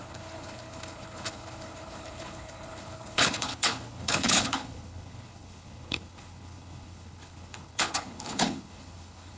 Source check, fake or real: fake